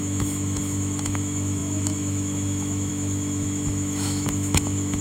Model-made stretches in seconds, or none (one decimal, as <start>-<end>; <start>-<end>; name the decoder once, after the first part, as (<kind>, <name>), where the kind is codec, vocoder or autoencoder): 0.0-5.0 (autoencoder, DAC-VAE)